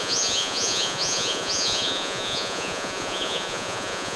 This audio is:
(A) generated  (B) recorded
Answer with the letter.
A